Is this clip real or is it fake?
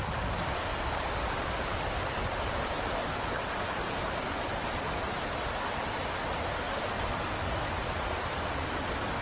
real